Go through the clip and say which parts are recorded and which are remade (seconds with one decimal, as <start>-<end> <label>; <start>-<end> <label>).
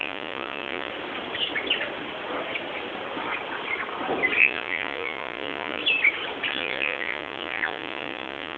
0.0-0.9 remade; 0.9-4.4 recorded; 4.4-5.8 remade; 5.8-6.5 recorded; 6.5-8.6 remade